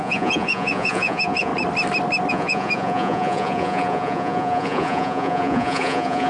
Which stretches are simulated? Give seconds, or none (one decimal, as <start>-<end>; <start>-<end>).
0.0-1.5; 2.3-6.3